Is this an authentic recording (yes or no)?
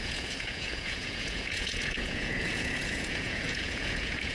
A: no